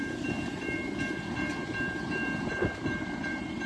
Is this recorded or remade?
remade